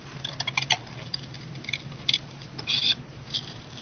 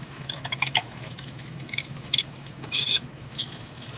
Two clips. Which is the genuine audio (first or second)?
first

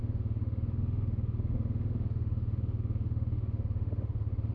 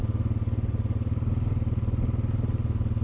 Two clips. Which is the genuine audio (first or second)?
second